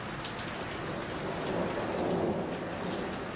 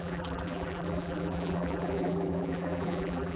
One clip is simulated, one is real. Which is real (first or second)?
first